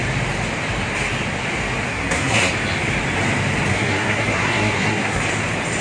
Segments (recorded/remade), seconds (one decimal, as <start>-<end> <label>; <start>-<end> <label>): 0.0-1.9 recorded; 1.9-2.5 remade; 2.5-3.7 recorded; 3.7-5.2 remade; 5.2-5.8 recorded